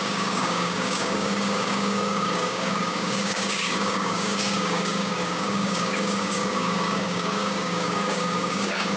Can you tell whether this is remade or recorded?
remade